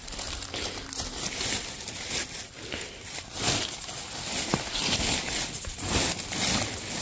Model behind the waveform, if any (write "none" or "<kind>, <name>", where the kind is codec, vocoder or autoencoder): none